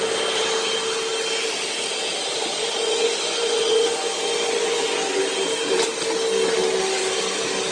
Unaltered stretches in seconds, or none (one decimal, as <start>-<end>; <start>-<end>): 0.0-2.5; 5.2-7.7